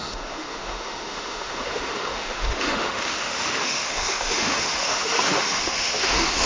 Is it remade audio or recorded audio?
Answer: remade